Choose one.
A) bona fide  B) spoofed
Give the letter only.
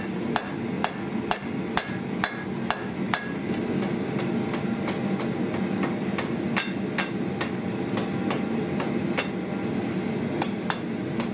A